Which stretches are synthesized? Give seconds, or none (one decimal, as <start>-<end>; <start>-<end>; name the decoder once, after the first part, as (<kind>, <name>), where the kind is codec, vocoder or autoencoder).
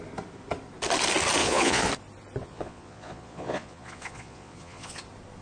1.4-1.9 (vocoder, Vocos); 2.4-5.0